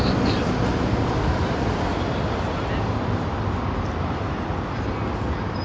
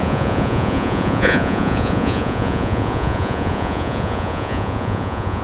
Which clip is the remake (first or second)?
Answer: second